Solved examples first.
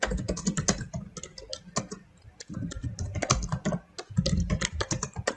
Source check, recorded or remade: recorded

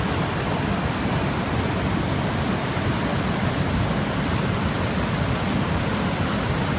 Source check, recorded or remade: recorded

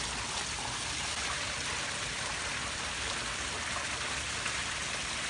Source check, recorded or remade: recorded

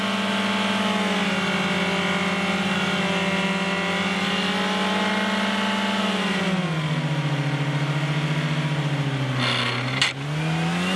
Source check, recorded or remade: recorded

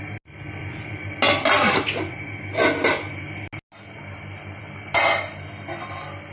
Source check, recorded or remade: recorded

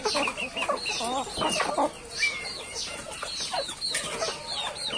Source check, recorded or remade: recorded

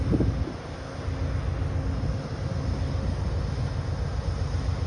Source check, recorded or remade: recorded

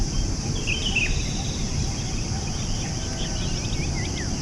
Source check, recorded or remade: recorded